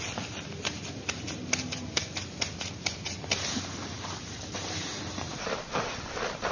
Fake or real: fake